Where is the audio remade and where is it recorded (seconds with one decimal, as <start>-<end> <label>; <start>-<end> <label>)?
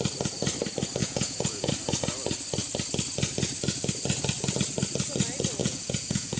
0.0-1.0 recorded; 1.0-1.7 remade; 1.7-5.6 recorded; 5.6-6.4 remade